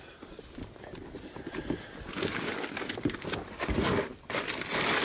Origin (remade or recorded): recorded